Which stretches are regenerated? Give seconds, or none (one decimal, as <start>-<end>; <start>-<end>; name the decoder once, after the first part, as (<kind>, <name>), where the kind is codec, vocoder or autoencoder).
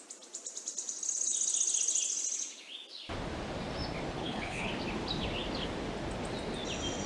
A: 4.2-4.7 (codec, HILCodec)